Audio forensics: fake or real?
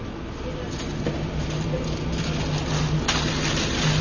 real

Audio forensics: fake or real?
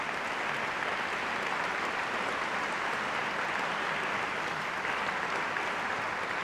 real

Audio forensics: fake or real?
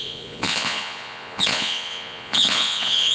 fake